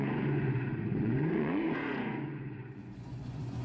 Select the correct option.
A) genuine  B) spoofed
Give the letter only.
B